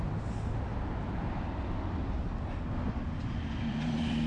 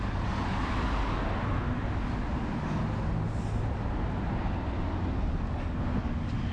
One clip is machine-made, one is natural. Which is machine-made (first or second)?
first